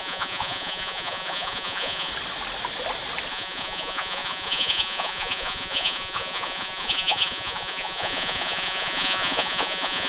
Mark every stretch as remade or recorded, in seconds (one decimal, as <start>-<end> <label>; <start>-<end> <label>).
0.0-2.1 remade; 2.1-3.3 recorded; 3.3-10.1 remade